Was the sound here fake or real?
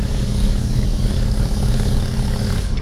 fake